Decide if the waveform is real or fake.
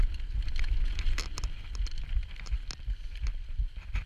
real